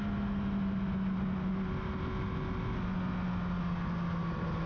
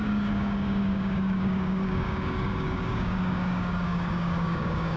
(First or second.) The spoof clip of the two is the second